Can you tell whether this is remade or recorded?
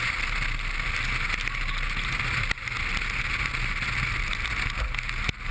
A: recorded